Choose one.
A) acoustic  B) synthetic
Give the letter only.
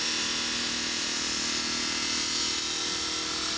A